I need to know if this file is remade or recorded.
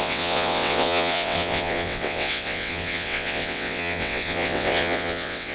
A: remade